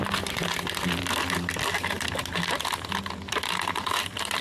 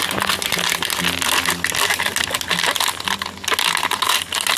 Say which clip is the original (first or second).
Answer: second